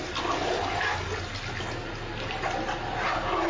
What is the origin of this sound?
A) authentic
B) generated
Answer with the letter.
A